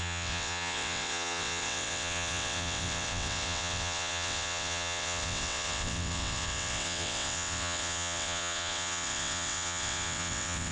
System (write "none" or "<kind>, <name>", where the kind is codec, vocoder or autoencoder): vocoder, WaveNeXt